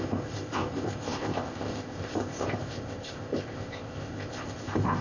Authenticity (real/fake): fake